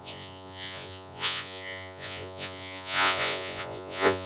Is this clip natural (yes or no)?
no